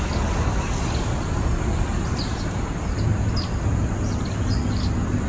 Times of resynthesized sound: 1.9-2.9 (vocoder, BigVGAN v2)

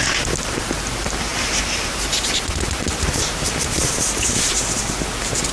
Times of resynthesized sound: 1.3-4.6 (vocoder, BigVGAN v2)

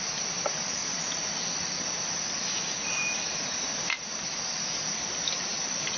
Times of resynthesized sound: 0.8-1.4 (vocoder, BigVGAN v2)